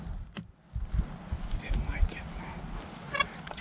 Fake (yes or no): no